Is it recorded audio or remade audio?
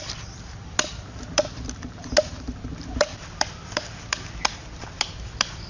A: remade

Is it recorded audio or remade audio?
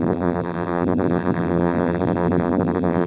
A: remade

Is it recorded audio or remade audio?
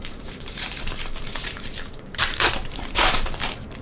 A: remade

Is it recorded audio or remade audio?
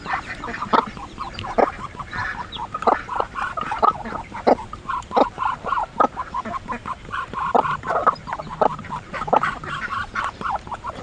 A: remade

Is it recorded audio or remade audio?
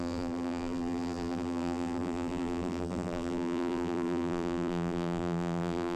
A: remade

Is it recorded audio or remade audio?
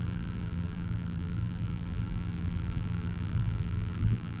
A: remade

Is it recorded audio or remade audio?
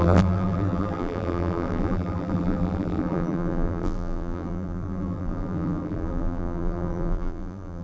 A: remade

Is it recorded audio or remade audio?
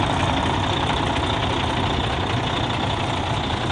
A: recorded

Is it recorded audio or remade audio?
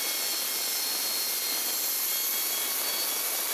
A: recorded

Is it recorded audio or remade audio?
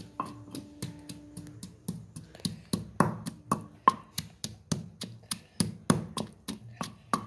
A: recorded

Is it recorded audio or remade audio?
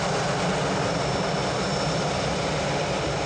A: recorded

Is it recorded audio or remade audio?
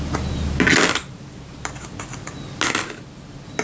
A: recorded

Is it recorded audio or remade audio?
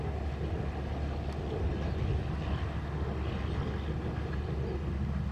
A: recorded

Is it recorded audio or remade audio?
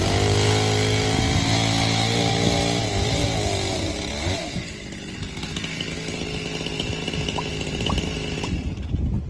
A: recorded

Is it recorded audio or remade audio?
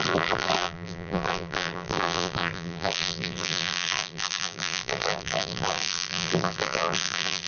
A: remade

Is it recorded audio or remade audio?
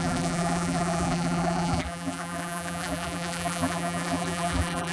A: remade